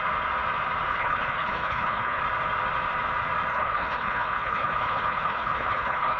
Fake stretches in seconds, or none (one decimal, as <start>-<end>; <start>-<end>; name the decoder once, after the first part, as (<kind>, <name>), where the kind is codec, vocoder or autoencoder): 0.9-2.2 (codec, HILCodec); 3.5-6.2